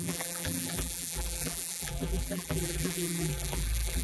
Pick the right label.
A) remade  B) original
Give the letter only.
A